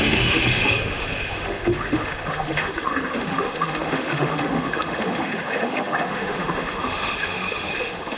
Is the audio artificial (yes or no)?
yes